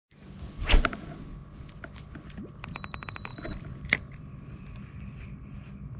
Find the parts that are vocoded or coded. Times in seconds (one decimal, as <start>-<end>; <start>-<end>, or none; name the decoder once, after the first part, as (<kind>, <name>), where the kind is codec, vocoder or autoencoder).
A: 3.3-4.8 (vocoder, BigVGAN v2)